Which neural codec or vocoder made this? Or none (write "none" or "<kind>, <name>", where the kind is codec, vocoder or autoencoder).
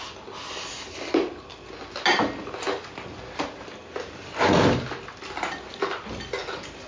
none